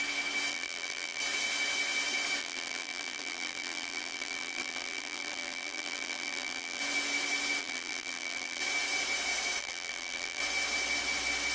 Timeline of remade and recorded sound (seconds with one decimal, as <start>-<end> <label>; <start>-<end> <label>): 0.0-0.5 recorded; 0.5-1.2 remade; 1.2-2.4 recorded; 2.4-6.8 remade; 6.8-7.6 recorded; 7.6-8.6 remade; 8.6-9.6 recorded; 9.6-10.4 remade; 10.4-11.5 recorded